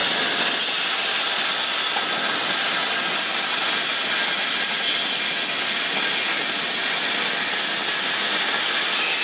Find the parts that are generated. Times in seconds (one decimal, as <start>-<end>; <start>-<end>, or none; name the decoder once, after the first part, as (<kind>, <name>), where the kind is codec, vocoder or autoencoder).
none